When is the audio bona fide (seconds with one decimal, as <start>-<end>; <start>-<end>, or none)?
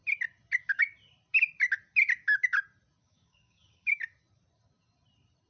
0.0-3.0; 4.0-5.5